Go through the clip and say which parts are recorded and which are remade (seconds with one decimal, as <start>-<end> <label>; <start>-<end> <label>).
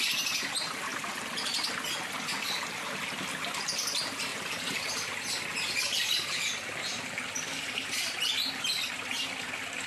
0.0-0.9 recorded; 0.9-1.7 remade; 1.7-4.3 recorded; 4.3-4.8 remade; 4.8-5.5 recorded; 5.5-8.9 remade; 8.9-9.9 recorded